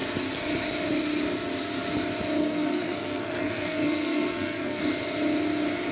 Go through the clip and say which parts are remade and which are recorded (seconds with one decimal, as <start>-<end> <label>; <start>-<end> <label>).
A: 0.0-2.4 recorded; 2.4-4.8 remade; 4.8-5.9 recorded